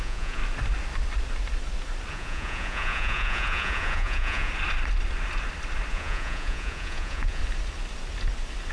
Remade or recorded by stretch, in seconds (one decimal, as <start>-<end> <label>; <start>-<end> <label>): 0.0-0.4 remade; 0.4-2.1 recorded; 2.1-4.5 remade; 4.5-5.9 recorded; 5.9-7.4 remade; 7.4-8.7 recorded